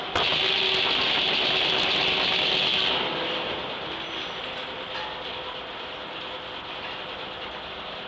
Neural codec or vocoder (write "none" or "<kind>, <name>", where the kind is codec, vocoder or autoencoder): none